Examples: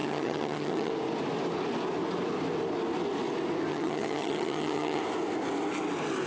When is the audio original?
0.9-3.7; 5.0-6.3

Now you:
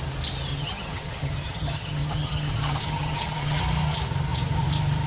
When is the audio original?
0.0-0.5; 3.6-5.1

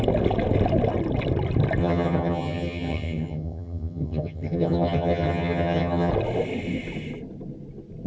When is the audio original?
0.0-1.8; 6.1-8.1

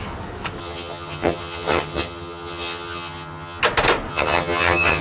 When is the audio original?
0.0-0.6; 3.6-4.1